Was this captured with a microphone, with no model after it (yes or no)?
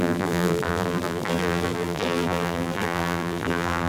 no